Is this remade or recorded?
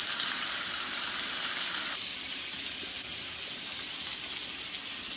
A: recorded